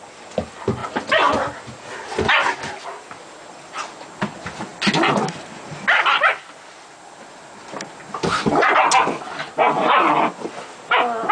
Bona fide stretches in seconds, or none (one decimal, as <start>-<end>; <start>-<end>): 0.0-11.3